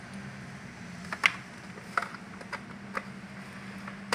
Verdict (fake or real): real